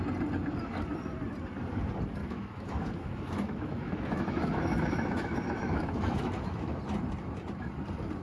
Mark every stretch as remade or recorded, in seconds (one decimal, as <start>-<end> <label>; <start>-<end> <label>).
0.0-2.2 recorded; 2.2-6.8 remade; 6.8-8.2 recorded

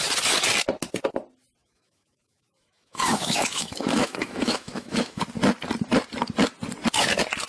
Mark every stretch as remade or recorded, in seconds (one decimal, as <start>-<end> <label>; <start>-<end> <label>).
0.0-1.6 recorded; 1.6-5.2 remade; 5.2-7.5 recorded

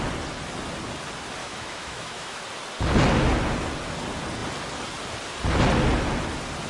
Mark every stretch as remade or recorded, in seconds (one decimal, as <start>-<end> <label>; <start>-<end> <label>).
0.0-1.4 recorded; 1.4-2.4 remade; 2.4-6.7 recorded

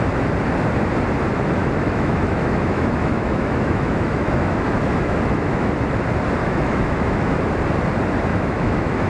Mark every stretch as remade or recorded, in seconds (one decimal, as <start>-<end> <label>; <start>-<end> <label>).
0.0-1.6 recorded; 1.6-5.7 remade; 5.7-6.4 recorded; 6.4-7.5 remade; 7.5-8.3 recorded; 8.3-9.1 remade

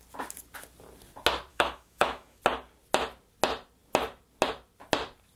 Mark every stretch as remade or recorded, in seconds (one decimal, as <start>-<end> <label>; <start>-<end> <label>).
0.0-1.5 recorded; 1.5-2.4 remade; 2.4-5.4 recorded

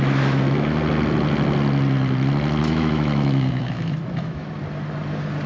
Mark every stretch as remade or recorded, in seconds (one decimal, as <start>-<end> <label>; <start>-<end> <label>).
0.0-2.6 recorded; 2.6-4.5 remade; 4.5-5.5 recorded

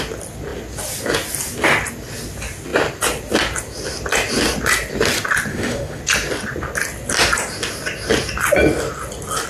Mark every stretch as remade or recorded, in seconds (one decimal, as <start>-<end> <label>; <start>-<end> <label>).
0.0-5.5 recorded; 5.5-6.0 remade; 6.0-9.5 recorded